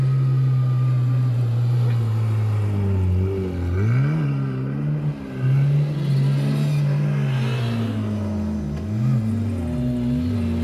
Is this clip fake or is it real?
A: real